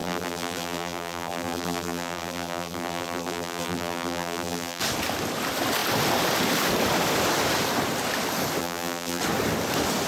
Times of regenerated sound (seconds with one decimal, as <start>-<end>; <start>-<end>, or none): 0.0-4.8; 8.6-9.2